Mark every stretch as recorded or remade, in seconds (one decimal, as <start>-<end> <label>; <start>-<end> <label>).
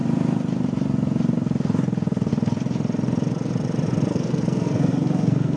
0.0-4.1 recorded; 4.1-5.6 remade